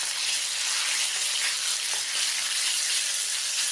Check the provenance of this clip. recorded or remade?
recorded